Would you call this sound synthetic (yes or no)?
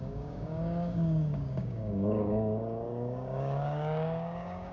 yes